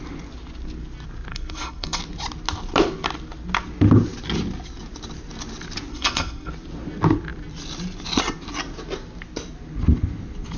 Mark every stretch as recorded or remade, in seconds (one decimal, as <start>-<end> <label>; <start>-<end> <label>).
0.0-1.3 recorded; 1.3-2.0 remade; 2.0-5.9 recorded; 5.9-6.5 remade; 6.5-10.6 recorded